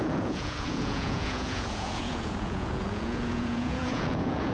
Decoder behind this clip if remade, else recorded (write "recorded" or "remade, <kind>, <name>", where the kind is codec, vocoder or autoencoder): remade, vocoder, Vocos